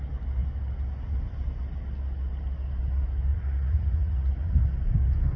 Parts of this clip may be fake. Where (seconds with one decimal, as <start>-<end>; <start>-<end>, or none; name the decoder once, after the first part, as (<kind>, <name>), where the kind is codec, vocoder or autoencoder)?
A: 3.3-4.6 (vocoder, Vocos)